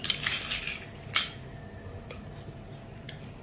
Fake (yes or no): no